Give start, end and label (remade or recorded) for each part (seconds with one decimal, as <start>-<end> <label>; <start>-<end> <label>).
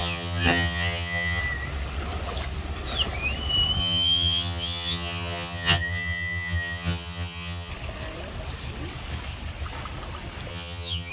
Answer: 0.0-1.4 remade; 1.4-3.8 recorded; 3.8-7.7 remade; 7.7-10.5 recorded; 10.5-11.1 remade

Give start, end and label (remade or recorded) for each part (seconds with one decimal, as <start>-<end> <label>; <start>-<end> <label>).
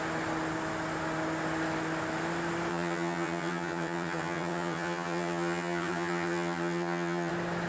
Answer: 0.0-2.7 recorded; 2.7-7.3 remade; 7.3-7.7 recorded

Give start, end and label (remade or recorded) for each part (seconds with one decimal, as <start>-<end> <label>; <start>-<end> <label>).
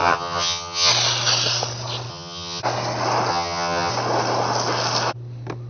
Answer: 0.0-0.9 remade; 0.9-2.1 recorded; 2.1-2.6 remade; 2.6-3.3 recorded; 3.3-3.9 remade; 3.9-5.7 recorded